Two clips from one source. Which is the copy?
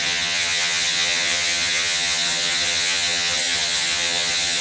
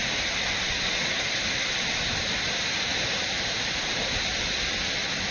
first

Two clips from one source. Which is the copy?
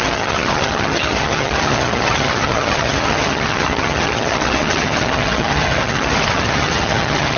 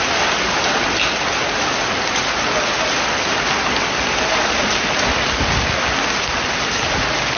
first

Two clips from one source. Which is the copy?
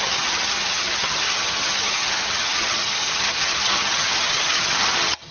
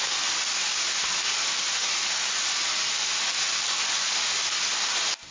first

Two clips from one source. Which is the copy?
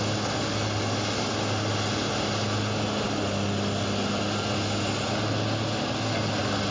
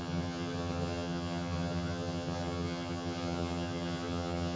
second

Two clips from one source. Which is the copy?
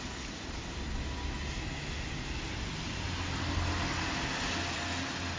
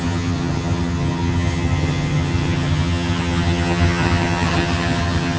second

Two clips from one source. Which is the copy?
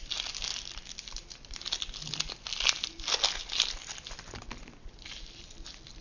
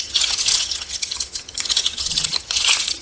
second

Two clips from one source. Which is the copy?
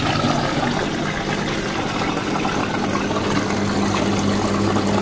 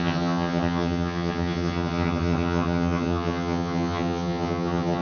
second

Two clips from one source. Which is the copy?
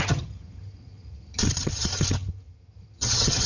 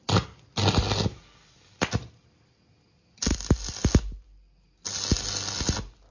first